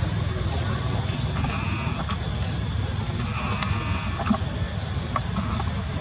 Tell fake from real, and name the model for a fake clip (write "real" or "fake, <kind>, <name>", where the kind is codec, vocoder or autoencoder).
real